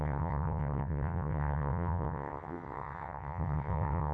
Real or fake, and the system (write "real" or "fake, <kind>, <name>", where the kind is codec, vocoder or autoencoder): fake, vocoder, WaveNeXt